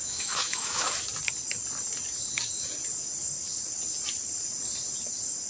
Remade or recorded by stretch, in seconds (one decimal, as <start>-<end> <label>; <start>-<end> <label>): 0.0-0.9 remade; 0.9-5.5 recorded